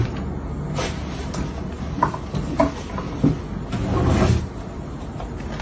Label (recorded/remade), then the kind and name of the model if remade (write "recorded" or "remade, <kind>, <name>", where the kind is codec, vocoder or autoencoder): recorded